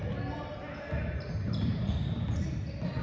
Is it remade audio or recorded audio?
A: recorded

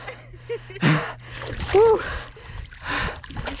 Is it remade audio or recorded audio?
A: recorded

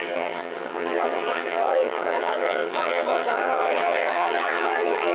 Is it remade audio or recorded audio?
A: remade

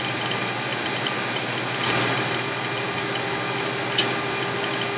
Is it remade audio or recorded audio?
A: recorded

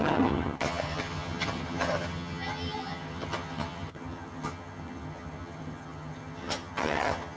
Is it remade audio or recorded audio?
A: remade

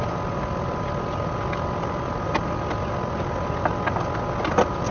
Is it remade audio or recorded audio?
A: recorded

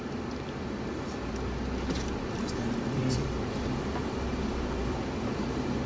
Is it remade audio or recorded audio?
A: recorded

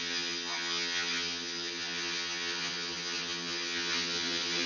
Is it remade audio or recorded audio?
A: remade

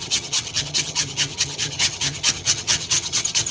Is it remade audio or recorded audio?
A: remade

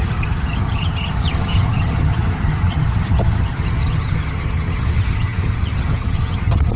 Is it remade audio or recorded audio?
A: remade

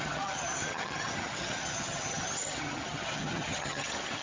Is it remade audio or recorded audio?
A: remade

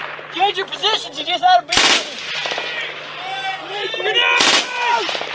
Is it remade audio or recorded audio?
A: recorded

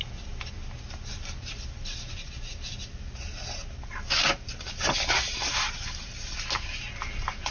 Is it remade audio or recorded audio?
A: recorded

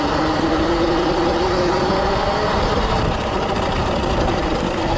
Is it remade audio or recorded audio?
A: recorded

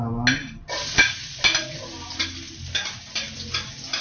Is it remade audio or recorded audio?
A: recorded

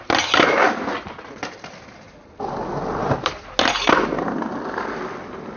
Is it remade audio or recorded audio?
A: recorded